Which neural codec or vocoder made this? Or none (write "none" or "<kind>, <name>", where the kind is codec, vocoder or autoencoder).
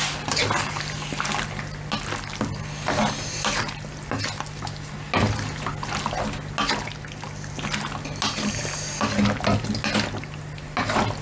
none